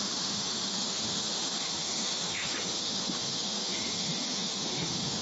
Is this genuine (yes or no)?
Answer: no